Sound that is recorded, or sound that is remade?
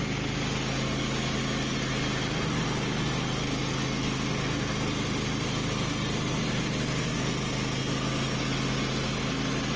recorded